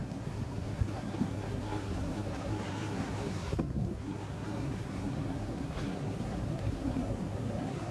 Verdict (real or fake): fake